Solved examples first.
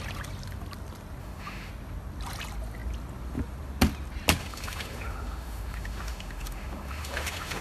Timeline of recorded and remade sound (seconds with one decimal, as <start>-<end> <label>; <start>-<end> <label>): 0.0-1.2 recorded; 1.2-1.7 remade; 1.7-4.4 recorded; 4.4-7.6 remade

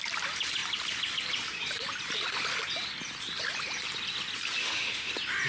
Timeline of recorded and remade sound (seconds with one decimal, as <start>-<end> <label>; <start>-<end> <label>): 0.0-4.6 recorded; 4.6-5.1 remade; 5.1-5.5 recorded

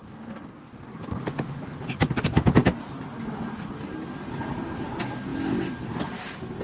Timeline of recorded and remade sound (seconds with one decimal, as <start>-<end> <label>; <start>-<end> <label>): 0.0-6.6 recorded

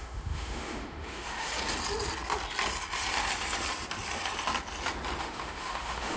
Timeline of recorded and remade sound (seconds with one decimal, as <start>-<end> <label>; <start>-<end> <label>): 0.0-1.5 remade; 1.5-5.2 recorded; 5.2-6.2 remade

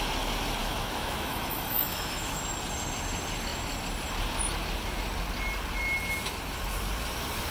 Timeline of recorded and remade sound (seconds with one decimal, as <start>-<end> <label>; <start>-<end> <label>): 0.0-0.6 recorded; 0.6-2.4 remade; 2.4-7.5 recorded

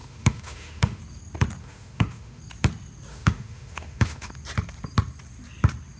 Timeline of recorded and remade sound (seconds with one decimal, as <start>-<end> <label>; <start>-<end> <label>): 0.0-1.0 remade; 1.0-1.6 recorded; 1.6-2.4 remade; 2.4-3.1 recorded; 3.1-4.3 remade; 4.3-6.0 recorded

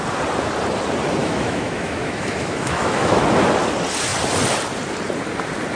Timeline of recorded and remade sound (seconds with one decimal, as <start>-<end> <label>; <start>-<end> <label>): 0.0-1.2 recorded; 1.2-3.2 remade; 3.2-5.8 recorded

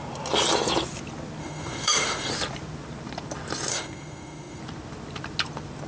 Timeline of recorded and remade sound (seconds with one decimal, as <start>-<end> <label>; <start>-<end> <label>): 0.0-1.4 recorded; 1.4-2.3 remade; 2.3-3.7 recorded; 3.7-4.6 remade; 4.6-5.9 recorded